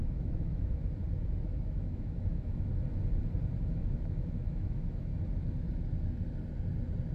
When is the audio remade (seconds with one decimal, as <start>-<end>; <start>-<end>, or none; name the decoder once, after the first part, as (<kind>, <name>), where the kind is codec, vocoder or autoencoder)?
0.0-0.8 (autoencoder, DAC-VAE); 1.4-2.7; 3.7-5.1